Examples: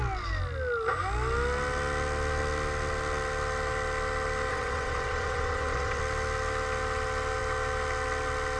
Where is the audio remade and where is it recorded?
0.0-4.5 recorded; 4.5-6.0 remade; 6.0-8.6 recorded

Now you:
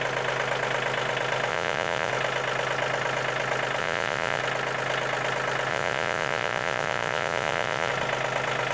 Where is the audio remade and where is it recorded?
0.0-1.5 recorded; 1.5-2.1 remade; 2.1-3.8 recorded; 3.8-4.4 remade; 4.4-5.7 recorded; 5.7-7.9 remade; 7.9-8.7 recorded

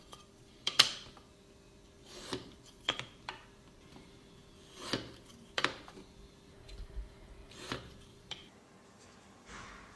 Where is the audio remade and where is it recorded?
0.0-10.0 remade

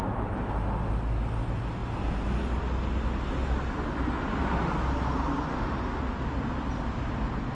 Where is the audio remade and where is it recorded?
0.0-5.5 recorded; 5.5-6.0 remade; 6.0-7.5 recorded

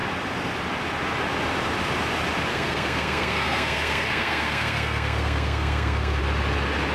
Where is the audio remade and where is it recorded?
0.0-2.5 recorded; 2.5-6.2 remade; 6.2-6.9 recorded